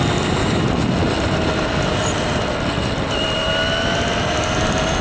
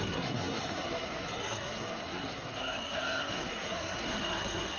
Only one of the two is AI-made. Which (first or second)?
second